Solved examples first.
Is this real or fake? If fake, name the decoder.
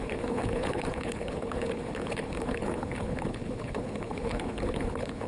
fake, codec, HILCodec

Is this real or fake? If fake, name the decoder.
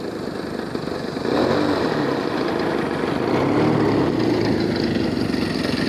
real